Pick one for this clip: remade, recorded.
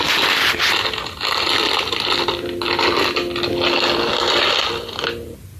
recorded